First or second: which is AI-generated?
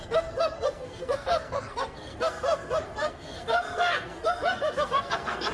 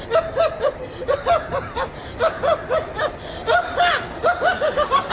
first